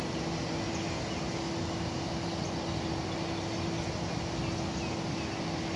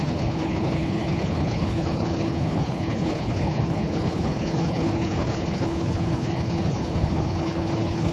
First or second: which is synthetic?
second